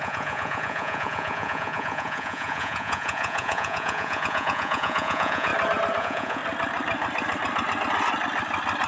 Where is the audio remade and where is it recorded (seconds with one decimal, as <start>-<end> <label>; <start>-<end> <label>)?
0.0-5.5 remade; 5.5-6.0 recorded; 6.0-6.4 remade; 6.4-8.9 recorded